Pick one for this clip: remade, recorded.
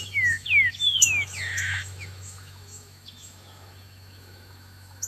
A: remade